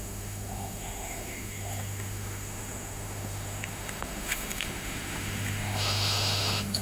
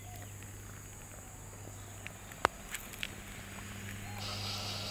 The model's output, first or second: first